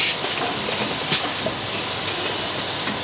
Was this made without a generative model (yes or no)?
yes